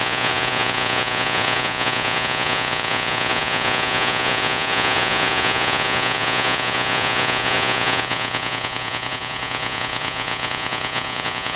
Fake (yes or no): yes